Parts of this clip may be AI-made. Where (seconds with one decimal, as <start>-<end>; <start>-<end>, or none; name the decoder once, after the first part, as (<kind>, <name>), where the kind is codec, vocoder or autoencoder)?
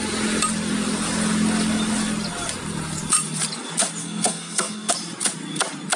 4.0-4.9 (codec, SNAC)